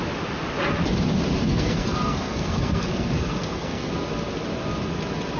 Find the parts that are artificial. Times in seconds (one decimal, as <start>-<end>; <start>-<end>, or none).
1.4-3.9